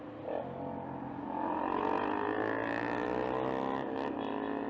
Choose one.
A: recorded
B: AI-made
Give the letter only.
A